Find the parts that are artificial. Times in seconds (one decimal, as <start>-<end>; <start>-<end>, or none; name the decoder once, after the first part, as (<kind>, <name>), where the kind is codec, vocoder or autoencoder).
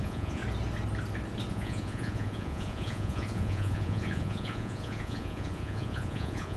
0.0-0.4 (vocoder, Vocos); 1.5-6.6